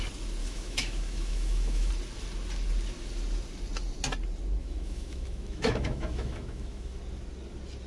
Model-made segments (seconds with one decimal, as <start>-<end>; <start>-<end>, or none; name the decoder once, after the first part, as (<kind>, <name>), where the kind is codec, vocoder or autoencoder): 0.4-1.9 (autoencoder, DAC-VAE); 4.6-7.0